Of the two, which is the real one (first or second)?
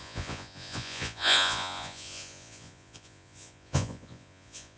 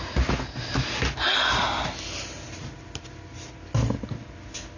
second